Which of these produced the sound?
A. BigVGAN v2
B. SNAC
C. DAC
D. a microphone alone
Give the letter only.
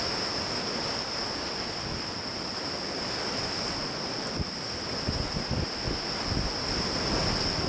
D